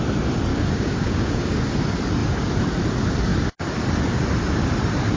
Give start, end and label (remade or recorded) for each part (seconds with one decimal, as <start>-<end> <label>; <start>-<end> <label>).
0.0-0.5 recorded; 0.5-1.6 remade; 1.6-5.2 recorded